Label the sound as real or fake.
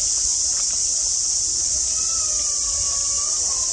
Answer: real